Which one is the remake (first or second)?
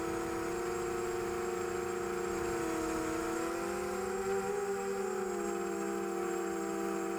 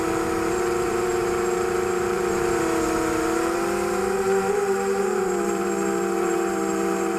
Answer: second